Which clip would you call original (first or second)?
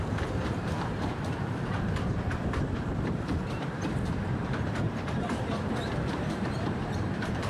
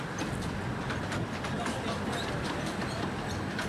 second